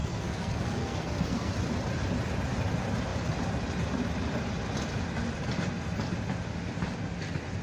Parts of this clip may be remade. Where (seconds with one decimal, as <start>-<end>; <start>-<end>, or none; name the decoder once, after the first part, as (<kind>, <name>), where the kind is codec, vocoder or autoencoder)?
0.0-1.5 (codec, SNAC)